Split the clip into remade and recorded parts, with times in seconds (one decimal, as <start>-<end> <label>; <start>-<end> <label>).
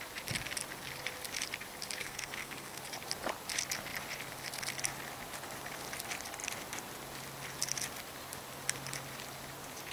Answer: 0.0-2.0 recorded; 2.0-2.8 remade; 2.8-9.9 recorded